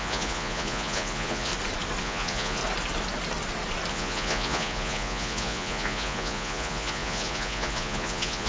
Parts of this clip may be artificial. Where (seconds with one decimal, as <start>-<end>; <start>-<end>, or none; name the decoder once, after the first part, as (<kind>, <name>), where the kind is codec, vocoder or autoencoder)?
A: 0.0-1.5 (vocoder, Vocos); 2.0-2.6; 3.9-8.5